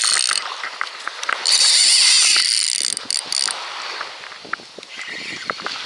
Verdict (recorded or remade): recorded